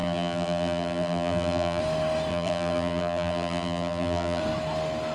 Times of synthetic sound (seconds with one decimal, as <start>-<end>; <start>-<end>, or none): 0.0-1.8; 2.3-4.4